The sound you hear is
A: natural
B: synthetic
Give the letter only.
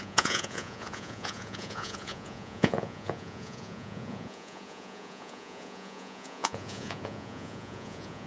B